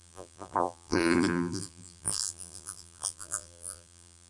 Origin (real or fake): fake